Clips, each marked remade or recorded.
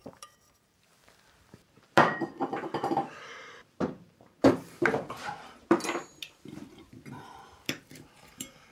remade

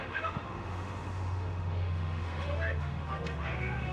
remade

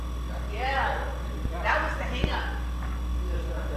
recorded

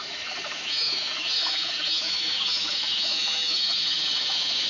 remade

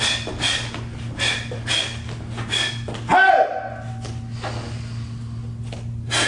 recorded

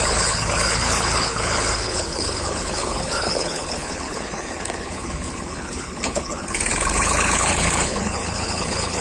remade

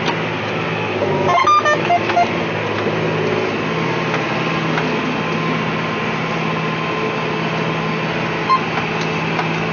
recorded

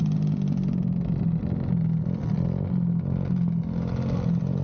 recorded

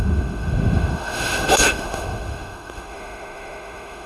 remade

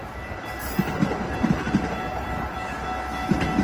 recorded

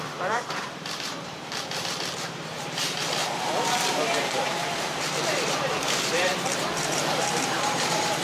remade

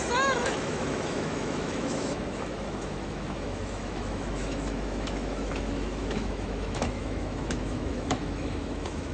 remade